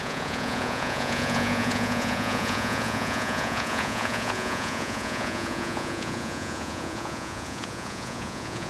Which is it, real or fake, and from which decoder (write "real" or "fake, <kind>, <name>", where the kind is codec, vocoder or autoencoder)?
fake, vocoder, Vocos